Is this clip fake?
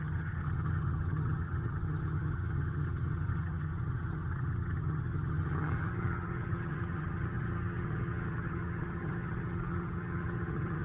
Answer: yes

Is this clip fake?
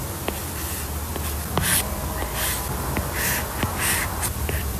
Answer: no